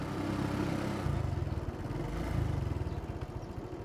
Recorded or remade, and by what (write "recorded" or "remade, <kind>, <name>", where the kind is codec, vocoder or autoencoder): recorded